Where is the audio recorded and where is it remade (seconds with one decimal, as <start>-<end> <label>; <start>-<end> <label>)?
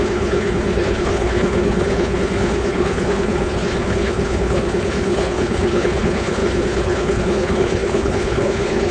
0.0-8.9 remade